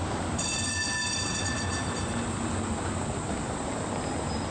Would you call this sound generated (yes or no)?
no